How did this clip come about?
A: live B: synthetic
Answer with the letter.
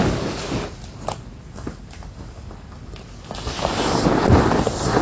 A